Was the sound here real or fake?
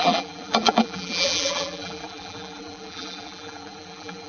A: fake